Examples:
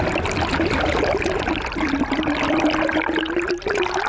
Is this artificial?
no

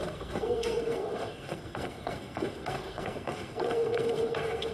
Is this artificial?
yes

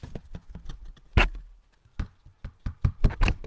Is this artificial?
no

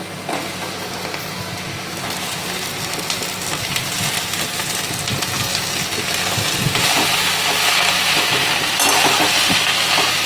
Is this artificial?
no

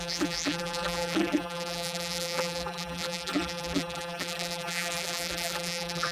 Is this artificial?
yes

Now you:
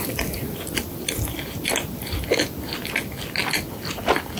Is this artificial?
no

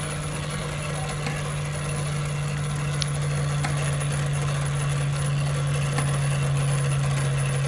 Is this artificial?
no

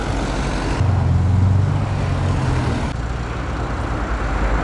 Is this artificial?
no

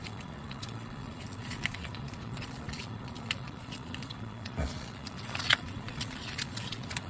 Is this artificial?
yes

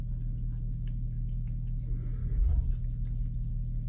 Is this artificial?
no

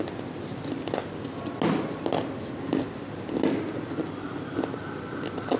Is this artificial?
no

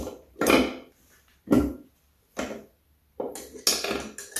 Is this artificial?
no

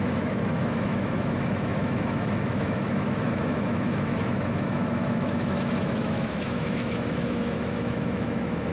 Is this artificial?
yes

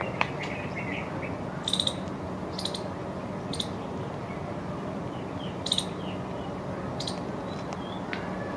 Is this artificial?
no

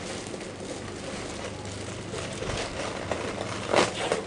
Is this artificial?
no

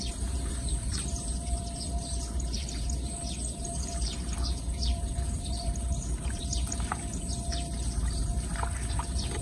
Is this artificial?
yes